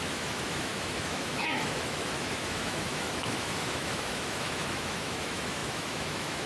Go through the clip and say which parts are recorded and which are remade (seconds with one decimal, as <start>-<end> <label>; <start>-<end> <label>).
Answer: 0.0-6.5 remade